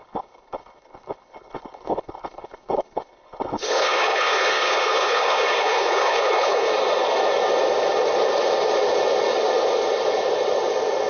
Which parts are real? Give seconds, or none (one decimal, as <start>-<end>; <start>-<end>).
6.7-11.1

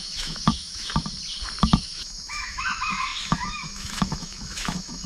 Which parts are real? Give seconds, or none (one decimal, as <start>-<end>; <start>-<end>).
0.9-1.6

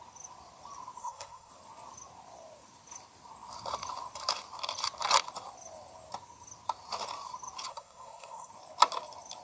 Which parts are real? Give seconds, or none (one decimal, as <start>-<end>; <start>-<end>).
0.0-1.0; 1.5-7.7; 8.5-9.4

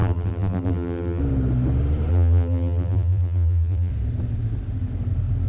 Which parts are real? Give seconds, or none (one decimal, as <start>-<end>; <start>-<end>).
1.2-2.1; 3.9-5.5

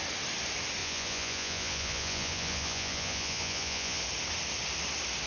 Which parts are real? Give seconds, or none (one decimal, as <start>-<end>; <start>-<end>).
0.0-0.8; 4.0-5.3

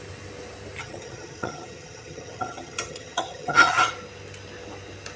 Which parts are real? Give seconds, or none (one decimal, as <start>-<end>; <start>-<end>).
0.0-0.8; 3.9-5.2

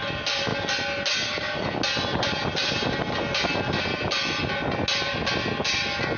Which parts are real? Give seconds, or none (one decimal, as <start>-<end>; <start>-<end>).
0.0-6.2